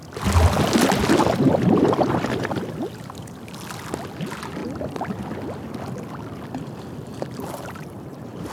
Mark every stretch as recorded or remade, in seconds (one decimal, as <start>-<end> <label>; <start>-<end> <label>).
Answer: 0.0-7.1 recorded; 7.1-8.5 remade